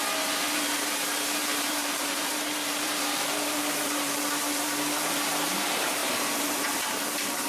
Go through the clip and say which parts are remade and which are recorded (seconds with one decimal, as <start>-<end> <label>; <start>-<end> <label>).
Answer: 0.0-7.5 remade